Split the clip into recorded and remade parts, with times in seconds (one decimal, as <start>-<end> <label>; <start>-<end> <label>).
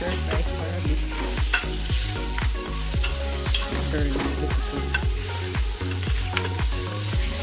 0.0-7.4 recorded